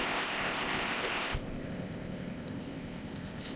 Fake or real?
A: fake